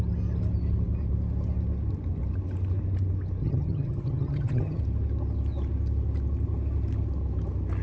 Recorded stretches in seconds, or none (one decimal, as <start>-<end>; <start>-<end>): 0.0-3.4; 4.8-7.8